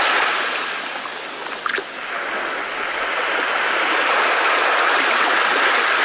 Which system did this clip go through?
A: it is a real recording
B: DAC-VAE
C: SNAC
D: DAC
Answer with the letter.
A